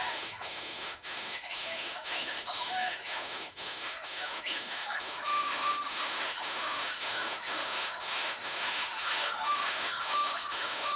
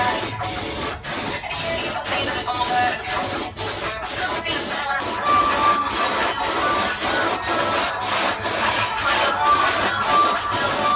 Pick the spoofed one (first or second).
first